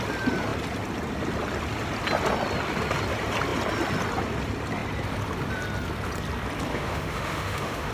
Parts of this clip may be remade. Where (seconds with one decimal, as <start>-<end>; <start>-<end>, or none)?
6.7-7.9